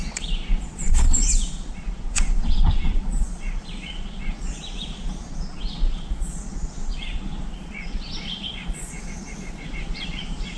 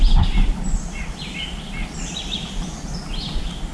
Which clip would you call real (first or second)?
second